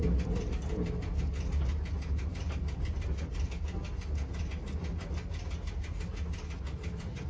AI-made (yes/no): no